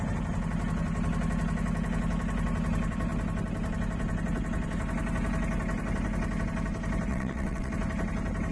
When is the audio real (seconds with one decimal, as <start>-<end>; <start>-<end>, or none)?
0.0-7.1; 7.7-8.5